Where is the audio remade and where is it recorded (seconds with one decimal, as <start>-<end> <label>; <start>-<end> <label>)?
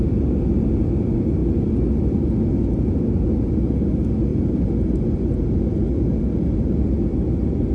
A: 0.0-7.7 recorded